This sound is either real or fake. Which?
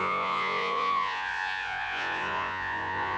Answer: fake